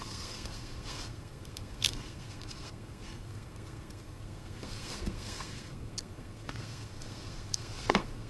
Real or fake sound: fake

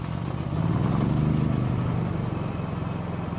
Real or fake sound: real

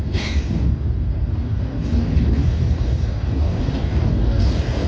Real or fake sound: fake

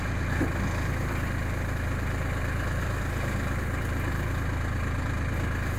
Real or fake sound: real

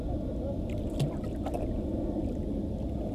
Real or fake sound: real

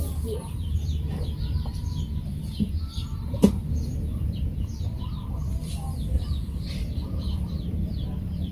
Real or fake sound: fake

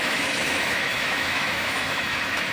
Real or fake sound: fake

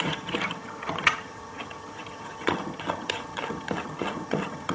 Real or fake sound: fake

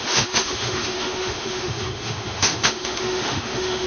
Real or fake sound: fake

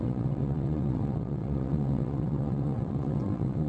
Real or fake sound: fake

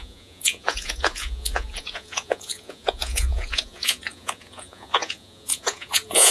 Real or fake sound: fake